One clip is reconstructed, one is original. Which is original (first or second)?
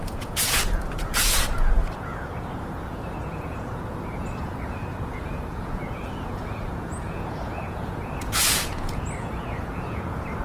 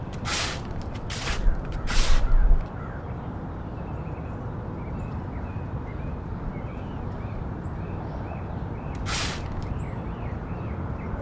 second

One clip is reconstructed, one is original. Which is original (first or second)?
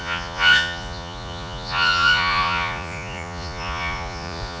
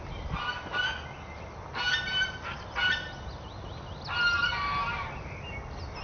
second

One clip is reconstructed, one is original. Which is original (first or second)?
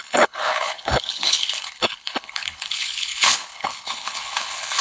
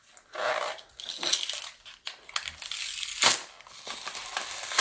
second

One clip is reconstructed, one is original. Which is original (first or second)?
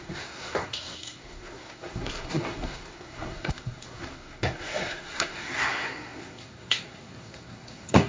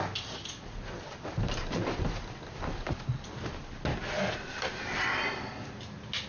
second